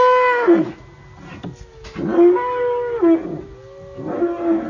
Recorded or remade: recorded